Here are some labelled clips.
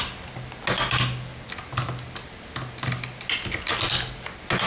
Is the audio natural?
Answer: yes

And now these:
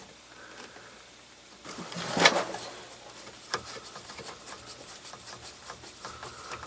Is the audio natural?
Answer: no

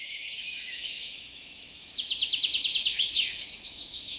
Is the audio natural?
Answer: no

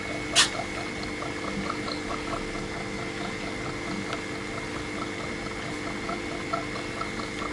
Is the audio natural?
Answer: yes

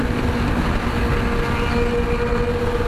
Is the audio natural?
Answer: yes